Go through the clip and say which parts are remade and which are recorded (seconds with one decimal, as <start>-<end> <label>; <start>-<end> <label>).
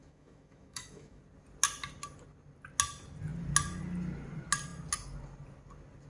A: 0.0-1.2 remade; 1.2-6.1 recorded